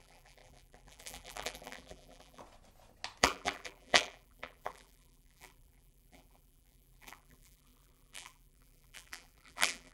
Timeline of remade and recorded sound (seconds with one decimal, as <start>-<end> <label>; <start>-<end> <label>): 0.0-2.4 remade; 2.4-3.2 recorded; 3.2-9.9 remade